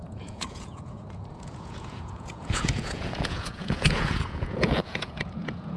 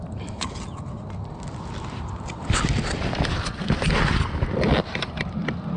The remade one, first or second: first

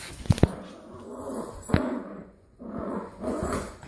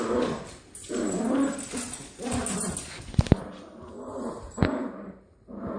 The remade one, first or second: first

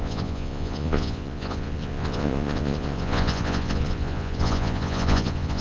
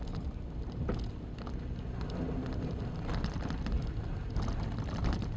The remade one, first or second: first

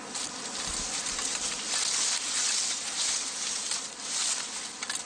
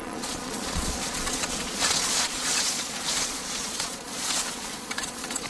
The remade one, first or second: second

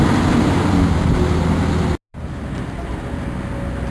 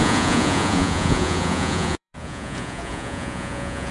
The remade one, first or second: second